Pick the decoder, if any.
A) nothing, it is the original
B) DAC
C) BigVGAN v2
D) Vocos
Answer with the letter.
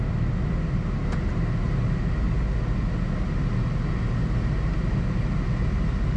A